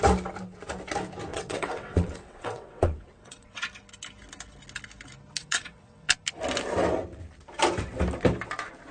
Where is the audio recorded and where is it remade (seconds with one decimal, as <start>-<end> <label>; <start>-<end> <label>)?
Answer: 0.0-1.3 recorded; 1.3-3.7 remade; 3.7-5.4 recorded; 5.4-6.1 remade; 6.1-8.9 recorded